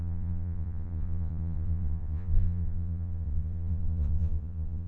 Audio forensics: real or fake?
fake